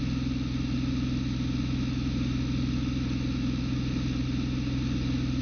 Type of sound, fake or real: real